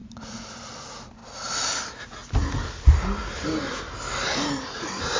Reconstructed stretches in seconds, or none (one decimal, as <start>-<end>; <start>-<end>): none